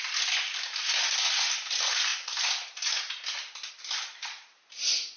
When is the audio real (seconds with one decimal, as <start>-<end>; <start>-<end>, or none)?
0.0-5.2